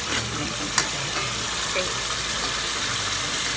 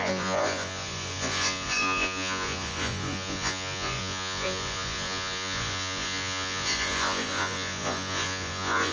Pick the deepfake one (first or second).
second